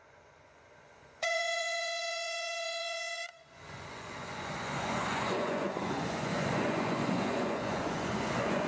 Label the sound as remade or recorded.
remade